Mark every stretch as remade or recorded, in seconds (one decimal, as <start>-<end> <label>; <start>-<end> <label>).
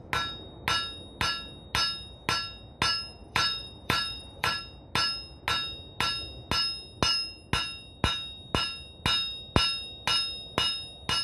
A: 0.0-3.2 recorded; 3.2-4.6 remade; 4.6-11.2 recorded